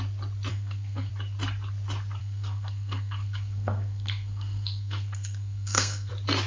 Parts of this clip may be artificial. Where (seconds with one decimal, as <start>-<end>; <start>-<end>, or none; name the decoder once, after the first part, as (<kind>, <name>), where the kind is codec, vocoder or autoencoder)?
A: 0.5-1.1 (codec, SNAC); 2.2-6.1